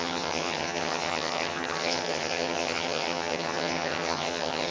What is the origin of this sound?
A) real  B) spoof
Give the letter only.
B